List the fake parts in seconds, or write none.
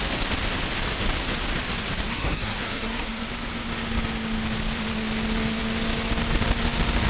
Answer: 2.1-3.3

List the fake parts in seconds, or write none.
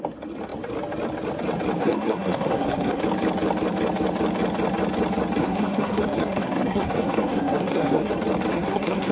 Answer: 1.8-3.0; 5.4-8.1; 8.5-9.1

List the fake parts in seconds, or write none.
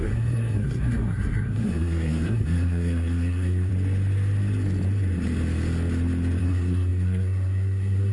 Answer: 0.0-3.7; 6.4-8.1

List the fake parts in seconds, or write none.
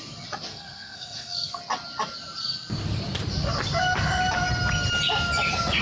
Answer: 0.5-1.6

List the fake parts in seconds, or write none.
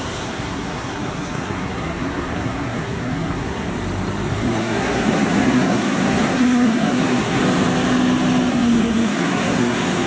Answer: 0.0-3.7; 4.3-7.4; 8.5-10.1